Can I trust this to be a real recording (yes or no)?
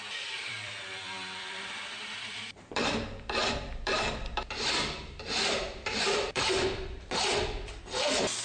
no